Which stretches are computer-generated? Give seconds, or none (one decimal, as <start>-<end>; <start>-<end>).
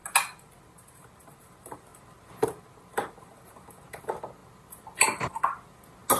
none